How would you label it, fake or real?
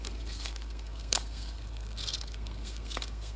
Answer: fake